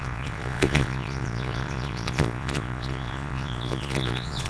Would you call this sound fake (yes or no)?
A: yes